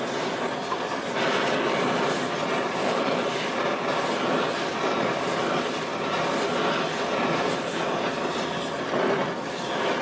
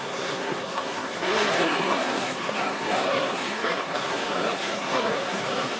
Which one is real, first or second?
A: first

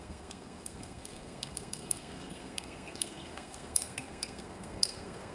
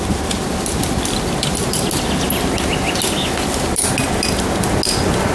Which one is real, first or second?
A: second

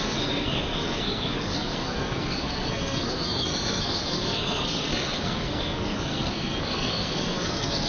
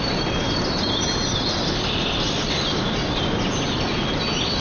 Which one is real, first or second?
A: second